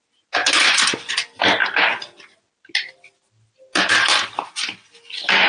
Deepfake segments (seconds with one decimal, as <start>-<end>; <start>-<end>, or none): 0.4-1.1